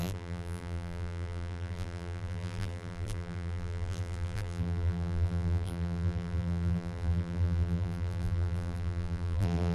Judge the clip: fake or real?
fake